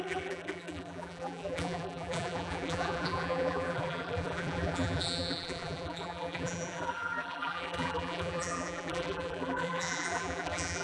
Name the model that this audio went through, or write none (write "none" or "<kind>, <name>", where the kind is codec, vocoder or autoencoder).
vocoder, BigVGAN v2